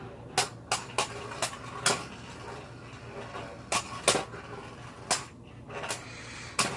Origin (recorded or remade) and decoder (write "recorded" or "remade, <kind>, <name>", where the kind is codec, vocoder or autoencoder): recorded